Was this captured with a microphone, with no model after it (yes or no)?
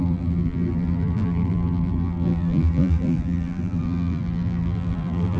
no